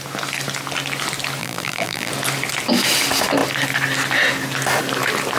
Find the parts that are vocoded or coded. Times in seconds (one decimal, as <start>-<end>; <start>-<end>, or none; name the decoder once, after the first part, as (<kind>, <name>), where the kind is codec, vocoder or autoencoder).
1.4-2.1 (vocoder, BigVGAN v2)